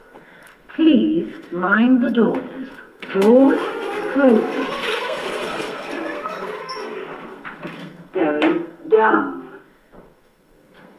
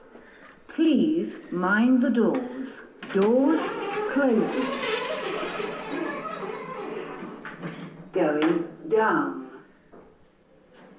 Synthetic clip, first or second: first